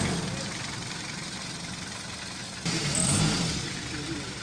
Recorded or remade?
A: recorded